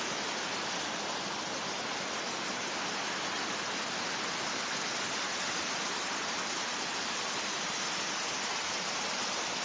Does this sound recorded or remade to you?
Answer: recorded